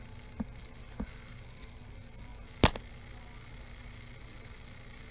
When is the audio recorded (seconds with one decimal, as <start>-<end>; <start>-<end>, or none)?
0.0-5.1